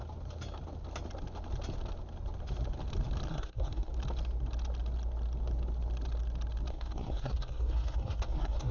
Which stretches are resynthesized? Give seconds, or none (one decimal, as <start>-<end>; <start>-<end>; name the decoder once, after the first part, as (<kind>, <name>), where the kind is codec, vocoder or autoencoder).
3.3-3.9 (codec, SNAC); 6.7-8.7